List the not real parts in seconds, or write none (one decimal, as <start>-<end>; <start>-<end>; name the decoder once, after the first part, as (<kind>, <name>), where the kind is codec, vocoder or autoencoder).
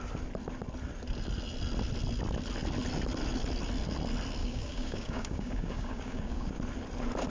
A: 4.4-6.5 (codec, DAC)